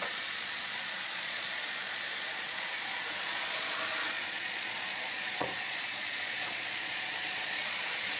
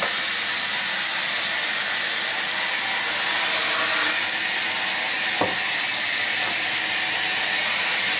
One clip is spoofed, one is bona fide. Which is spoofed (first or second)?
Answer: first